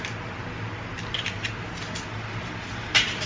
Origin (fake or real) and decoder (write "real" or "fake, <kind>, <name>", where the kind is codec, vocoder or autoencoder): real